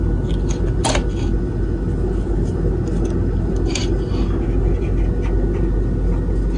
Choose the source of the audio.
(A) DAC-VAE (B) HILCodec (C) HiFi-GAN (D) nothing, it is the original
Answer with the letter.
D